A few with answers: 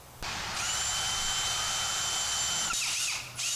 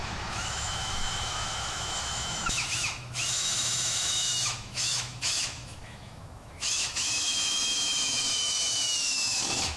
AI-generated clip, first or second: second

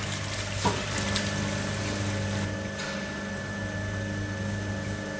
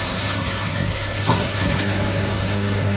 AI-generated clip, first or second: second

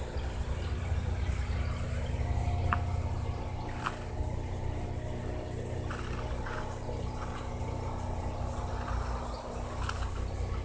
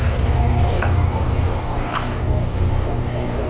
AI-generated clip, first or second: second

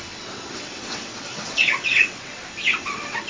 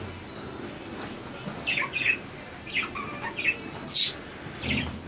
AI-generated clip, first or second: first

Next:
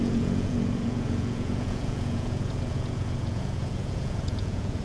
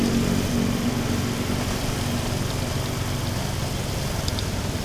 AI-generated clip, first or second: first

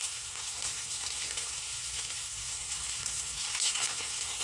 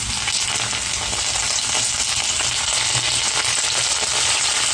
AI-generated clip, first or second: first